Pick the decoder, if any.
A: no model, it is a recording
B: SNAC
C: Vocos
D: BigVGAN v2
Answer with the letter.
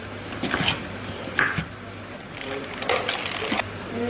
A